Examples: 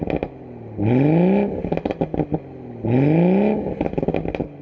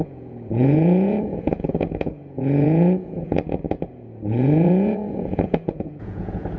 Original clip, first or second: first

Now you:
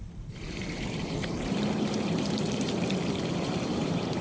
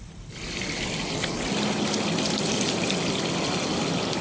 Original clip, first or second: second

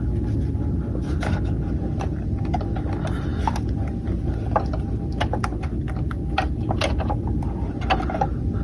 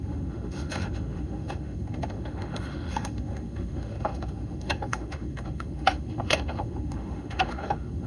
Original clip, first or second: first